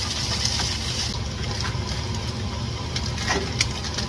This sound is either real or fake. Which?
real